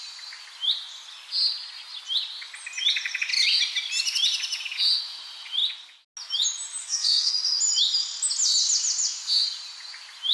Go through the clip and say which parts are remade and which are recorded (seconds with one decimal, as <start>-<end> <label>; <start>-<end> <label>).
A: 0.0-6.8 recorded; 6.8-7.3 remade; 7.3-10.3 recorded